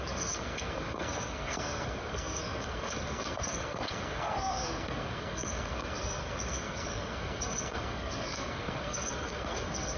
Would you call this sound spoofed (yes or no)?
yes